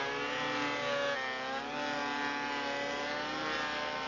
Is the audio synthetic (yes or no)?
no